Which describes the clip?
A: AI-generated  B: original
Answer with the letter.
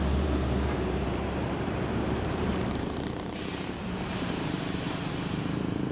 A